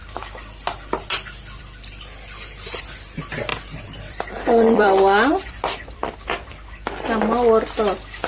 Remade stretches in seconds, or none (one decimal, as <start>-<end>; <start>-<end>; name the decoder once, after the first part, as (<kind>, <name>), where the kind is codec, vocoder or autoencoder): 3.5-6.0 (vocoder, BigVGAN v2)